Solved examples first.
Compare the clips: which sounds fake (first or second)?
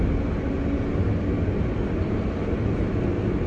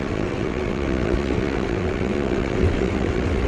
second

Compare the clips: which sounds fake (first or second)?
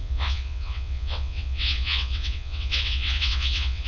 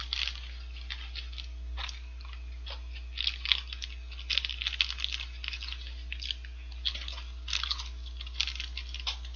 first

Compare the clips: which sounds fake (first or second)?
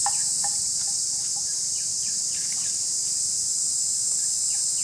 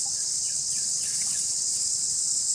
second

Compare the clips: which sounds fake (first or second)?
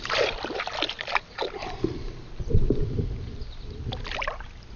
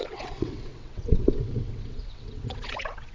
second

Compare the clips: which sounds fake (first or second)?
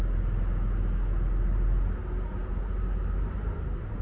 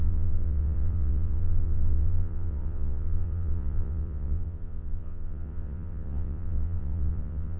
second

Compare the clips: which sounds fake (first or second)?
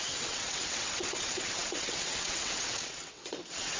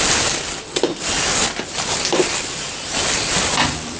first